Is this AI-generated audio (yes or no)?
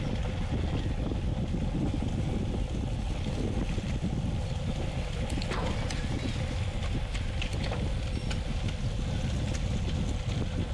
no